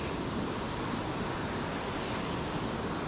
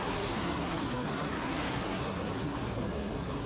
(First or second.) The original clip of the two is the first